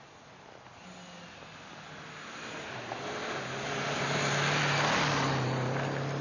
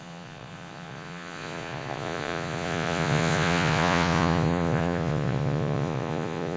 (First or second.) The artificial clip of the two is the second